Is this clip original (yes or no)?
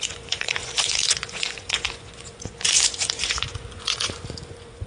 no